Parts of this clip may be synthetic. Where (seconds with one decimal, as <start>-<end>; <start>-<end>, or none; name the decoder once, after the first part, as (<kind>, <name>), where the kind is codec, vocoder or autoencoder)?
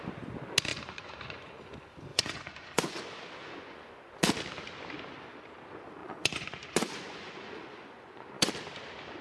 0.7-1.6 (vocoder, Vocos); 2.1-3.0; 3.4-4.3; 6.0-8.5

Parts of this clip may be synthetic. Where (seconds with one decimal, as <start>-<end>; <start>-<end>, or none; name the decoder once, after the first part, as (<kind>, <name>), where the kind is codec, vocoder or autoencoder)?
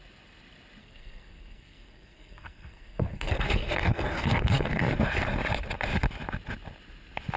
0.8-4.8 (codec, SNAC)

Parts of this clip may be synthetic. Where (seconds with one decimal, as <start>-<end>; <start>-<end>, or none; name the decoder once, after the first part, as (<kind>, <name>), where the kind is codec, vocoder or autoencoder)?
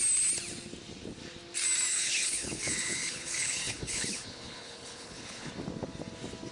1.9-5.5 (codec, HILCodec)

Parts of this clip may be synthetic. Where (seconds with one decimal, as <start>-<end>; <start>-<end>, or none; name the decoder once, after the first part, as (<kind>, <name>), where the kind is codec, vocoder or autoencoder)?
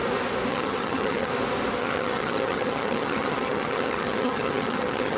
0.5-1.3 (vocoder, HiFi-GAN); 1.8-5.2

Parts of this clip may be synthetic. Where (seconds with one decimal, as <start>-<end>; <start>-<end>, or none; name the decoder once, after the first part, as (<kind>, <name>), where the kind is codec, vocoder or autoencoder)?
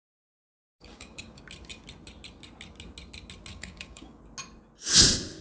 0.7-1.4 (codec, DAC); 3.5-4.2